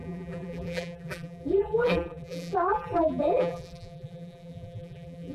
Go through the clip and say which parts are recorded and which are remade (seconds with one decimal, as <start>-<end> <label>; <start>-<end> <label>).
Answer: 0.0-5.3 remade